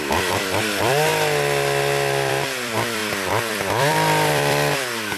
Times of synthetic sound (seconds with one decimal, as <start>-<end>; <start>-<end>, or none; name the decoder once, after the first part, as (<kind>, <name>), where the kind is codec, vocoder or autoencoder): 0.0-1.1 (vocoder, BigVGAN v2); 2.3-5.2